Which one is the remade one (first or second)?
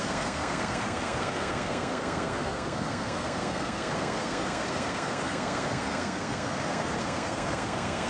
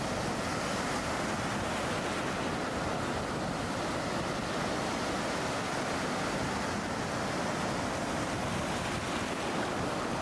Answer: first